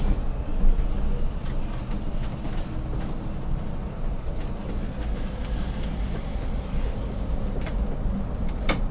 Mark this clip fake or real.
real